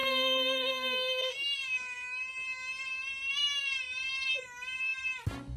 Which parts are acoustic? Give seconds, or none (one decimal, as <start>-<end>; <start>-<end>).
0.0-5.6